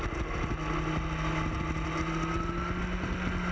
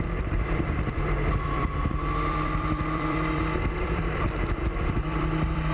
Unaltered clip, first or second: first